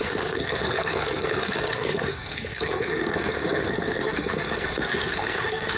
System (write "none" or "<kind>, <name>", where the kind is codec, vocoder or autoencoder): codec, SNAC